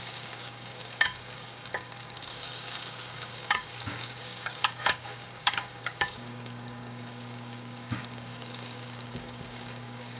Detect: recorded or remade remade